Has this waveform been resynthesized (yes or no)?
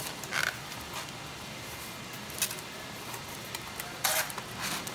no